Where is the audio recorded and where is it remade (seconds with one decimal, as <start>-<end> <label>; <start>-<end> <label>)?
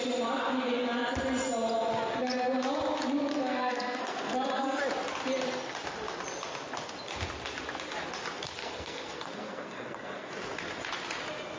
0.0-3.3 recorded; 3.3-4.8 remade; 4.8-8.6 recorded; 8.6-10.3 remade; 10.3-11.6 recorded